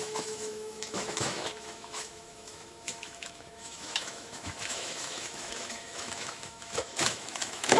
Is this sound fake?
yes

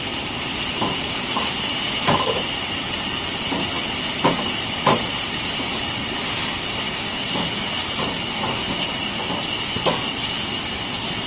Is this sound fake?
no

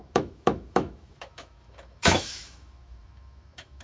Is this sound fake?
yes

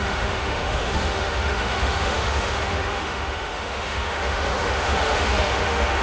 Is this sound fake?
yes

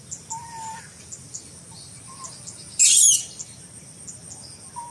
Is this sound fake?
no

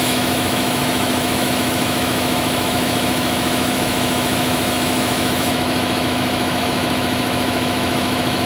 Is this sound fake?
yes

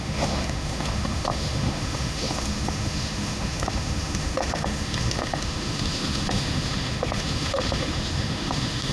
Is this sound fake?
yes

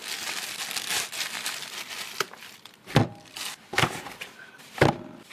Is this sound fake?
no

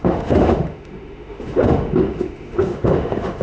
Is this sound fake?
yes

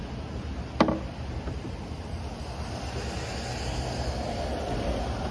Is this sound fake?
no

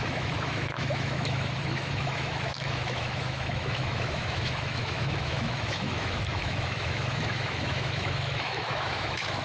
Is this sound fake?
yes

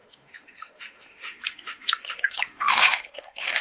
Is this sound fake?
yes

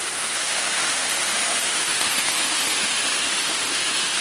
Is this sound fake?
yes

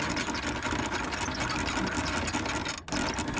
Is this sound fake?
no